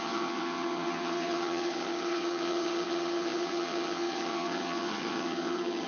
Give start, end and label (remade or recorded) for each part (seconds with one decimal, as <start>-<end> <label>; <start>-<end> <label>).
0.0-5.9 remade